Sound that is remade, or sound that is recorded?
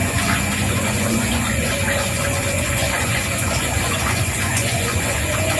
remade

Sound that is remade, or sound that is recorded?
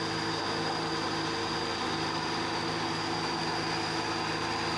recorded